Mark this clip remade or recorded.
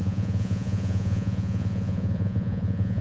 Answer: remade